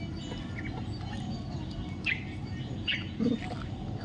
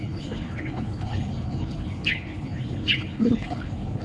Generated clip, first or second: second